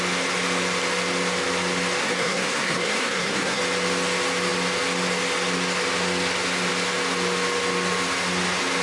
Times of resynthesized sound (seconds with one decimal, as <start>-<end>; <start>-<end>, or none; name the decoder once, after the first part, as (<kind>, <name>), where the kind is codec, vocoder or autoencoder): 2.0-3.6 (codec, SNAC)